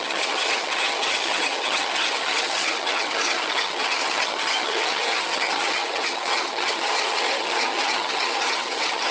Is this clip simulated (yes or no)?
yes